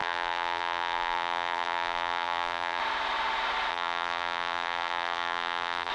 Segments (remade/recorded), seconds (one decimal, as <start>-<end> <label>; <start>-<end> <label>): 0.0-2.8 remade; 2.8-3.7 recorded; 3.7-5.9 remade